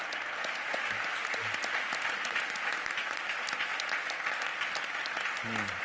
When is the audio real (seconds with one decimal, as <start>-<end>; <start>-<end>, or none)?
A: 0.0-4.5